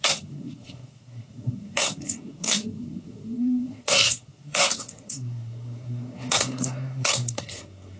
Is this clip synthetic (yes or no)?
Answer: yes